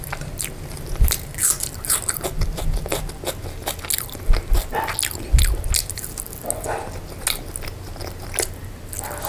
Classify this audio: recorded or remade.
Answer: recorded